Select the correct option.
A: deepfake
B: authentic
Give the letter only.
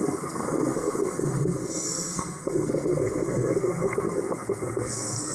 A